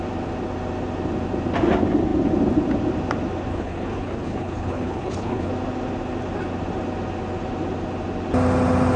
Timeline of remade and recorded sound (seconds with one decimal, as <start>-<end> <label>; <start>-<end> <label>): 0.0-3.5 recorded; 3.5-5.5 remade; 5.5-9.0 recorded